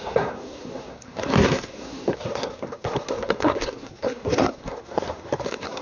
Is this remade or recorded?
remade